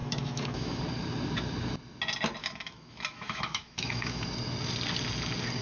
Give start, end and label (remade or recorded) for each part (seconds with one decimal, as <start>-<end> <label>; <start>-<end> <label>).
0.0-0.8 remade; 0.8-2.4 recorded; 2.4-4.2 remade; 4.2-5.6 recorded